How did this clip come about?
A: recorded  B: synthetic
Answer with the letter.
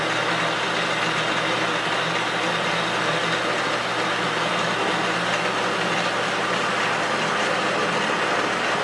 A